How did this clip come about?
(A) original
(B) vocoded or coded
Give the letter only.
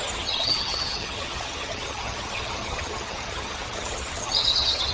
B